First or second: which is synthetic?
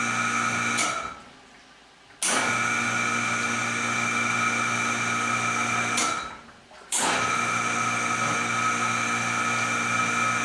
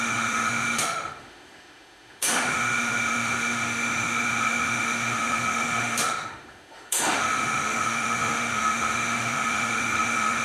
second